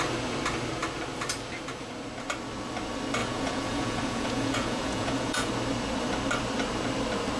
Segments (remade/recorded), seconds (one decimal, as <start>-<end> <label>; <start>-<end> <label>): 0.0-3.2 recorded; 3.2-5.5 remade; 5.5-7.4 recorded